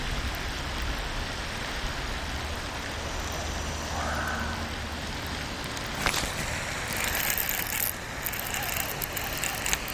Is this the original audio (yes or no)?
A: yes